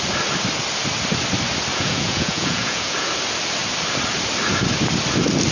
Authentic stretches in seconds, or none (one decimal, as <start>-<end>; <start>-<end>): 0.0-1.7; 3.1-5.5